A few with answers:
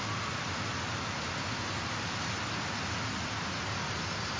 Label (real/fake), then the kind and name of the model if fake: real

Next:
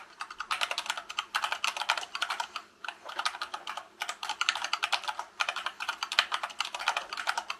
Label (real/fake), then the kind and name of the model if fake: fake, vocoder, BigVGAN v2